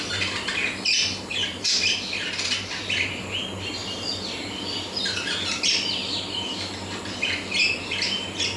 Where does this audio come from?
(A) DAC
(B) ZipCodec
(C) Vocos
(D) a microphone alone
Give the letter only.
D